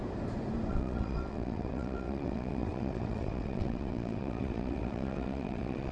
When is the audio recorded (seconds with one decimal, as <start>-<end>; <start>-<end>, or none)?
0.0-0.7